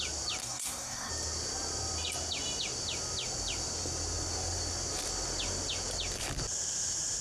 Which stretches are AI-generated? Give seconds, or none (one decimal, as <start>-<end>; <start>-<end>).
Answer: 0.4-1.1